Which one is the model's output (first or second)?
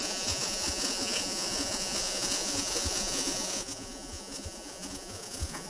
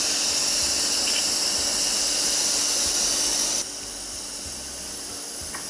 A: first